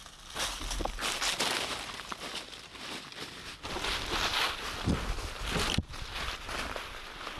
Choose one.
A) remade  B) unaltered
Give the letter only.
B